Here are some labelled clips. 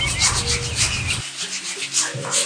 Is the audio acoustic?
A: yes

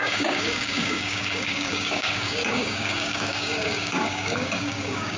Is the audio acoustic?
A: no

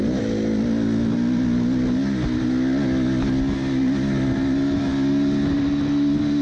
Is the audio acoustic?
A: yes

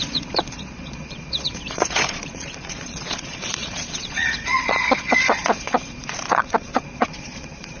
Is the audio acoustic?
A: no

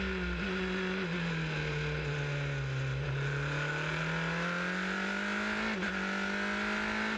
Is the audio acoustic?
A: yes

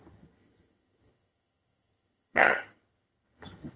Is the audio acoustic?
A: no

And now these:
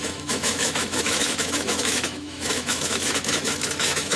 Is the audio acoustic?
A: no